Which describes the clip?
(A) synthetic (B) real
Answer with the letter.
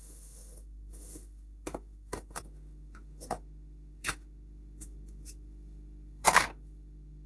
A